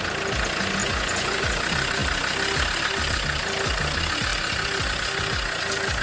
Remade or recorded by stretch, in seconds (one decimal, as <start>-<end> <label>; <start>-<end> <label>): 0.0-0.8 recorded; 0.8-1.4 remade; 1.4-6.0 recorded